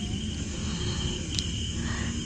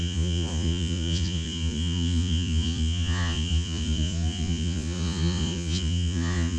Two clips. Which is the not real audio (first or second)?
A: second